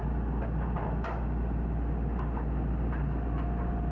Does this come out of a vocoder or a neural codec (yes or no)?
no